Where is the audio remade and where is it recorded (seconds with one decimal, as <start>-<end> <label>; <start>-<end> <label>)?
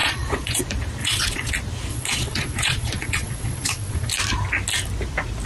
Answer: 0.0-0.6 remade; 0.6-1.0 recorded; 1.0-1.5 remade; 1.5-1.9 recorded; 1.9-4.1 remade; 4.1-5.5 recorded